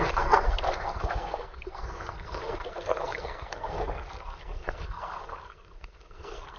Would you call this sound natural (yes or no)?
no